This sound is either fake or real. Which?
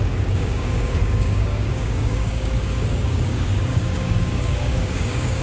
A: fake